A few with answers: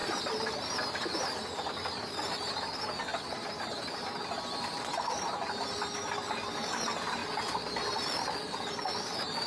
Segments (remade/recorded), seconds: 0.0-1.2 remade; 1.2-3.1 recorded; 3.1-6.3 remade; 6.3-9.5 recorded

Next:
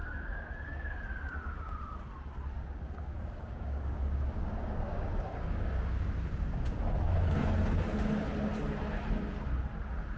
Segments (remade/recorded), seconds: 0.0-0.9 remade; 0.9-2.6 recorded; 2.6-6.8 remade; 6.8-10.2 recorded

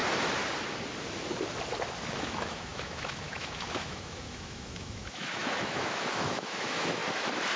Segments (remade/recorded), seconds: 0.0-2.1 recorded; 2.1-7.0 remade; 7.0-7.6 recorded

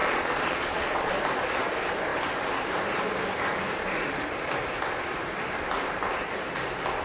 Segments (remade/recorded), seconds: 0.0-1.1 remade; 1.1-7.0 recorded

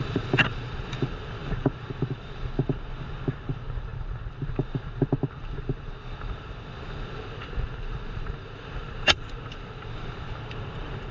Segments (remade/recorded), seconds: 0.0-11.1 remade